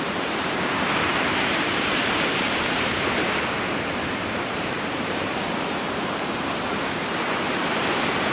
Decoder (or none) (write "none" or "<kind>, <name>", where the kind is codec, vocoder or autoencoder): vocoder, BigVGAN v2